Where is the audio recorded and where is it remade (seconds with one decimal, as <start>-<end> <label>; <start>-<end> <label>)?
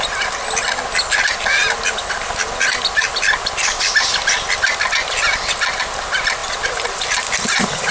0.0-7.9 recorded